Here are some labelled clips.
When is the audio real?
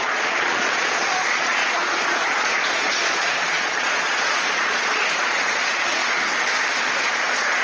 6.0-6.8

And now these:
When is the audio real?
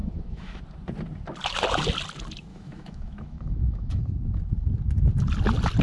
0.6-2.5; 4.0-5.8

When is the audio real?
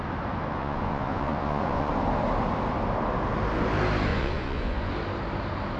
0.0-0.5; 1.9-4.1; 4.9-5.8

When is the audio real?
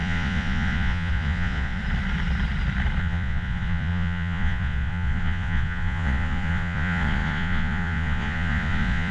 1.8-3.0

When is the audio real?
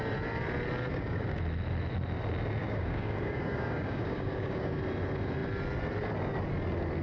0.0-0.9; 1.4-2.6; 4.8-7.0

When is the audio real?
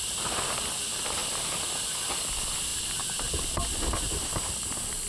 0.0-5.1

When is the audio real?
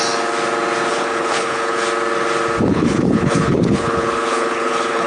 0.0-0.9; 1.8-2.7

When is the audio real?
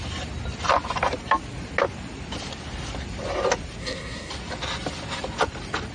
0.0-3.8; 4.3-5.9